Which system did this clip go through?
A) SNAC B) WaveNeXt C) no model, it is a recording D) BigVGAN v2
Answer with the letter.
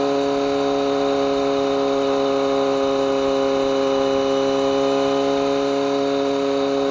C